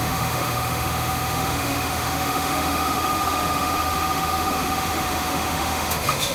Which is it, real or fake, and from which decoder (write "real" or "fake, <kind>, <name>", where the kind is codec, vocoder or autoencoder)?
fake, autoencoder, DAC-VAE